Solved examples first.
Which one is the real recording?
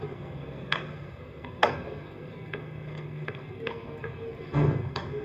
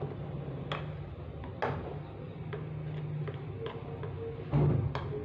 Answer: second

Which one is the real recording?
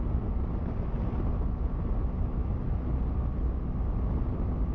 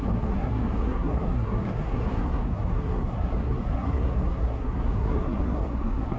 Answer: first